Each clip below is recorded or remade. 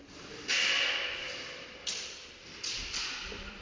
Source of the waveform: remade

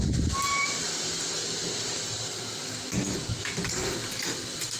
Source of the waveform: recorded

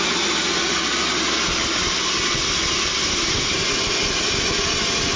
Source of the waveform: recorded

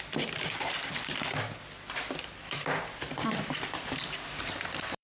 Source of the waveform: remade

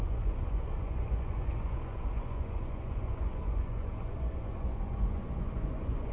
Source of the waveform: remade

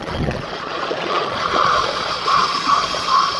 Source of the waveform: remade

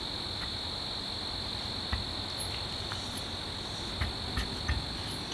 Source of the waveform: recorded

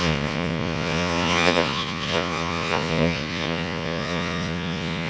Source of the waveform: remade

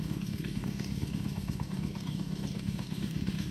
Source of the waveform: remade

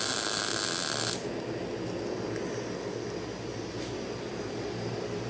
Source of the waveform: recorded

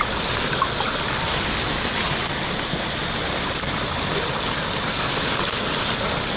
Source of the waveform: recorded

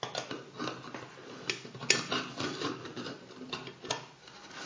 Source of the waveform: recorded